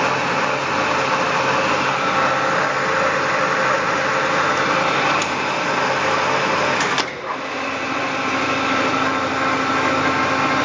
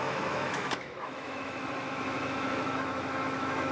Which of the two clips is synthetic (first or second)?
second